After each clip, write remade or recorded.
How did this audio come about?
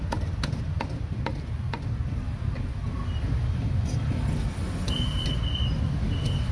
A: recorded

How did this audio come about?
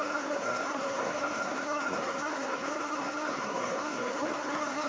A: remade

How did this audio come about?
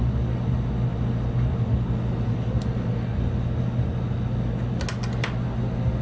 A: recorded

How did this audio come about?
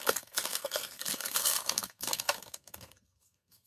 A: remade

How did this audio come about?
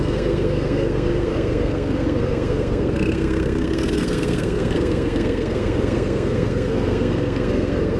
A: remade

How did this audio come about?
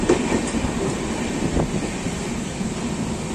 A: recorded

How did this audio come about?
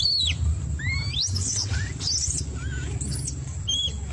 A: recorded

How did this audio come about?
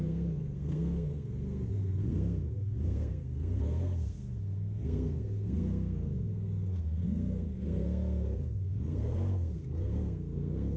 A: remade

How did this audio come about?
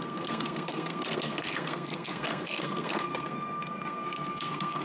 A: remade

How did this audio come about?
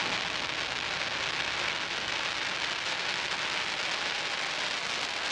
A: recorded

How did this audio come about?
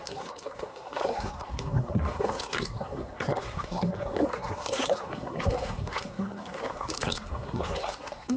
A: remade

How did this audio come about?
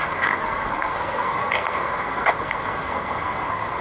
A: remade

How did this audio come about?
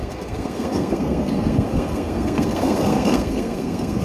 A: remade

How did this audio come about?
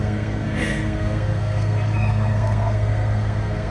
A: remade